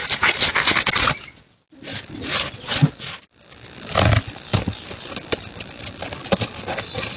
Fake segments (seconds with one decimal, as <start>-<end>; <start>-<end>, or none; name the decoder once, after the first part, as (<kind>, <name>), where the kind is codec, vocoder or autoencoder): none